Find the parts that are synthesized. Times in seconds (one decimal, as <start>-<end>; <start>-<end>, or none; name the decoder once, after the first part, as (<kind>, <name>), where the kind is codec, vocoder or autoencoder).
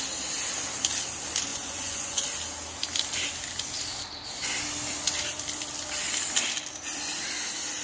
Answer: 1.5-2.2 (vocoder, Vocos)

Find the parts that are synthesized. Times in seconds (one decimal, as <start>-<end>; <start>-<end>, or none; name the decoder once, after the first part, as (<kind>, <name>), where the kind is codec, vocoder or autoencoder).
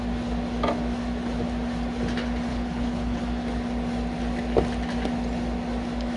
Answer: 2.5-3.2 (codec, HILCodec)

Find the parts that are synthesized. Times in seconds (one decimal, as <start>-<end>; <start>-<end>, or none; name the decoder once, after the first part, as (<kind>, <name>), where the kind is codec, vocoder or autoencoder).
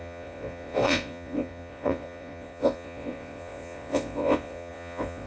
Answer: 0.0-5.3 (vocoder, Vocos)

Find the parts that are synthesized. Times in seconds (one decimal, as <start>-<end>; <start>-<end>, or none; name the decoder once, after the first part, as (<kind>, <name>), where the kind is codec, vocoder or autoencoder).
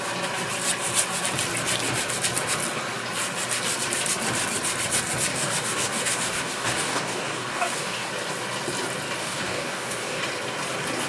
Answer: 5.3-8.1 (codec, DAC); 9.2-10.2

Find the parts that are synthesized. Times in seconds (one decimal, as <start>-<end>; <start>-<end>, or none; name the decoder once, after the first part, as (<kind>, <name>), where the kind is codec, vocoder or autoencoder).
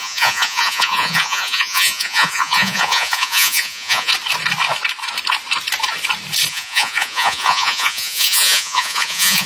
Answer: 0.0-4.1 (vocoder, Vocos); 6.5-9.5